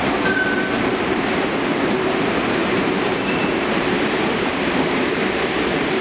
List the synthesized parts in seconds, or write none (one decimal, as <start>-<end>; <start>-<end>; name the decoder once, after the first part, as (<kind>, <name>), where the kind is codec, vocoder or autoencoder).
2.6-5.2 (vocoder, BigVGAN v2)